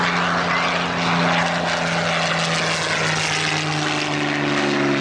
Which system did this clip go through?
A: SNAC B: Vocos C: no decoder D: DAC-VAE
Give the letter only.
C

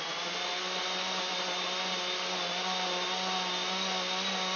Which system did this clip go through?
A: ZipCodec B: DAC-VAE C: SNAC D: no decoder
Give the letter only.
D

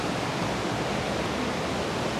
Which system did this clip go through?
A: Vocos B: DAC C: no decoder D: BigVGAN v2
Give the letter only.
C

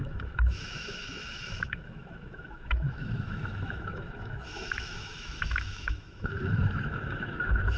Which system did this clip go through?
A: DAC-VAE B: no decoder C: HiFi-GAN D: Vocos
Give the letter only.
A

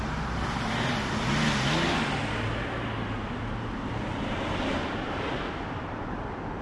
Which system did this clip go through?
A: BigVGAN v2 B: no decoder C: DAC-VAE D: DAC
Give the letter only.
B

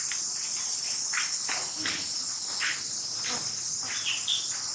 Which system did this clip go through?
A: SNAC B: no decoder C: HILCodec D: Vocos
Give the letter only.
B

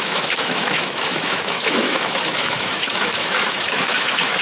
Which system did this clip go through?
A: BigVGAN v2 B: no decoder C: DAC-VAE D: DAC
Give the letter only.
C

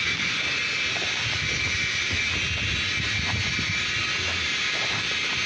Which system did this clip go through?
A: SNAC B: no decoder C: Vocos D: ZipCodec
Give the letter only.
B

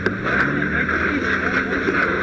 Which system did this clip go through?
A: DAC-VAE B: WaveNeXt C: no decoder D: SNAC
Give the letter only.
C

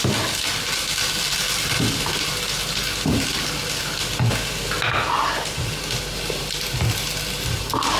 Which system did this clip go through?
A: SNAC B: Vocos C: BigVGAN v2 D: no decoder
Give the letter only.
D